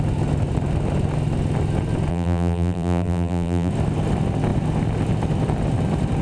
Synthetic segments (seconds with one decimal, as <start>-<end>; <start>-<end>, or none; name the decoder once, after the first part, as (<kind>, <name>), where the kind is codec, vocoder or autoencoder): 2.1-3.7 (vocoder, BigVGAN v2)